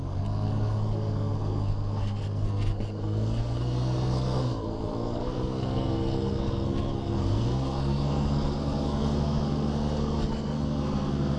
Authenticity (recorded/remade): remade